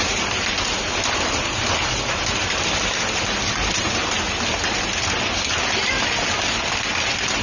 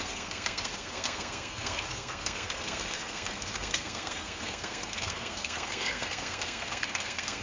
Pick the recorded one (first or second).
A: first